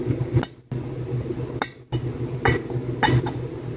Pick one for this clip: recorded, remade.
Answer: recorded